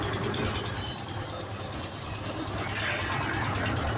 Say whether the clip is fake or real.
real